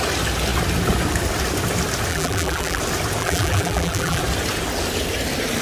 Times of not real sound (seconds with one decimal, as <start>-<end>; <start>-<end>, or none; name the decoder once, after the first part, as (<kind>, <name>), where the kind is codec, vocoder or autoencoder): 2.1-2.8 (vocoder, BigVGAN v2); 3.2-4.2